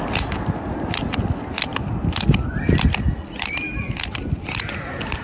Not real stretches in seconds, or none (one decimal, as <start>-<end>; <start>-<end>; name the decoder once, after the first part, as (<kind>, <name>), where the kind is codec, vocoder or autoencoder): none